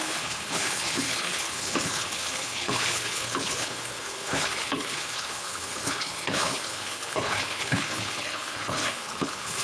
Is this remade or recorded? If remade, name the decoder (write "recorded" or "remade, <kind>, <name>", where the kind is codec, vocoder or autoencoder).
remade, codec, HILCodec